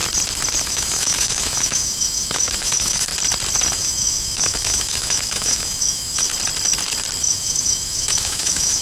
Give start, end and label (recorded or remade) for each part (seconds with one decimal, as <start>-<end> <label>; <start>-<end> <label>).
0.0-0.6 recorded; 0.6-3.1 remade; 3.1-3.7 recorded; 3.7-6.3 remade; 6.3-7.2 recorded; 7.2-8.8 remade